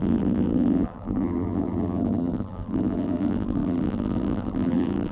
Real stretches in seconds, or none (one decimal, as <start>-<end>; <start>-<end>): none